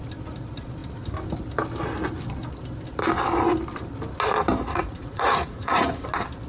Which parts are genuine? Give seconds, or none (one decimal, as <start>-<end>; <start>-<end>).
0.0-4.6; 6.1-6.5